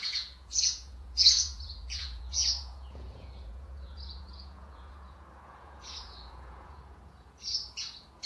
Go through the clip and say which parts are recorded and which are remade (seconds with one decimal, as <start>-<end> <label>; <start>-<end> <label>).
0.0-8.3 remade